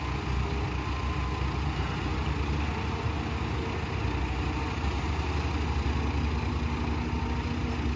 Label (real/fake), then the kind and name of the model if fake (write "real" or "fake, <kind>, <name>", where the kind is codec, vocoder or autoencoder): real